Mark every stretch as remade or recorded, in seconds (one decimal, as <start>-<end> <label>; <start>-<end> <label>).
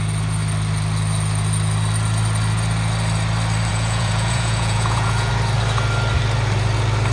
0.0-3.7 recorded; 3.7-5.3 remade; 5.3-7.1 recorded